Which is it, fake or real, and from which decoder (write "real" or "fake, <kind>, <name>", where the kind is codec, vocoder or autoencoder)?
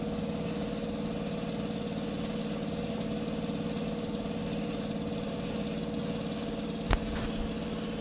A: real